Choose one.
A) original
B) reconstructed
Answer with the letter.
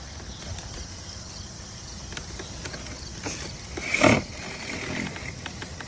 B